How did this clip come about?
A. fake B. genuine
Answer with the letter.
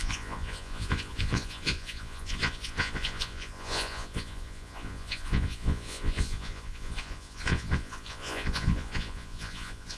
A